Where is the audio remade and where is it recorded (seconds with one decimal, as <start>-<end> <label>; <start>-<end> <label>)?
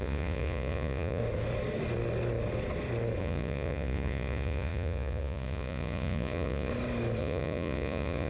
0.0-1.2 remade; 1.2-3.2 recorded; 3.2-6.7 remade; 6.7-7.2 recorded; 7.2-8.3 remade